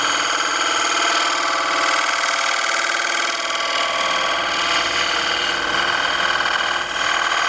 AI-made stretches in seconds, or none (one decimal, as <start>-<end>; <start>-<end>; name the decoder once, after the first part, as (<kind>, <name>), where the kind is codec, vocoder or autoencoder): none